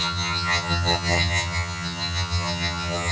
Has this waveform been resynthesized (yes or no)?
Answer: yes